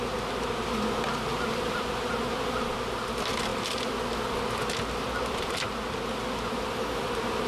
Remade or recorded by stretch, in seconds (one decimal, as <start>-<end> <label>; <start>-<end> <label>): 0.0-7.5 recorded